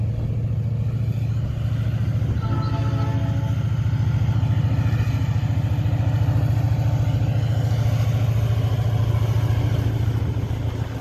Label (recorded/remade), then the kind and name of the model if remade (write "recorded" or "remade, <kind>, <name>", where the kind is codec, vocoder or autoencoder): recorded